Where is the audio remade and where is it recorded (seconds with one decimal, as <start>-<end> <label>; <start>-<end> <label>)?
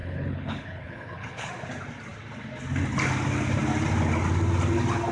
0.0-1.5 remade; 1.5-5.1 recorded